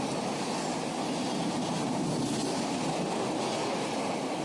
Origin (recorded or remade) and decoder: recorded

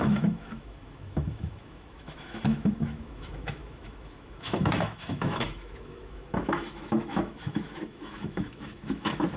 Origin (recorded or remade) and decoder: remade, autoencoder, DAC-VAE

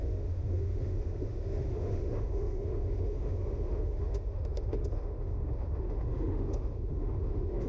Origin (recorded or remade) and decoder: remade, autoencoder, DAC-VAE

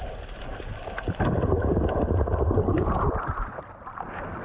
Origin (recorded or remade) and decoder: recorded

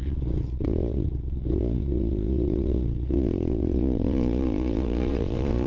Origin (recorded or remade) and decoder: remade, vocoder, Vocos